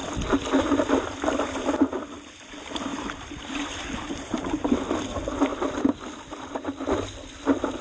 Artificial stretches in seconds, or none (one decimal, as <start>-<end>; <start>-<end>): 2.9-4.7